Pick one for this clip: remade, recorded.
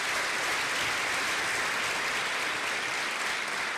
recorded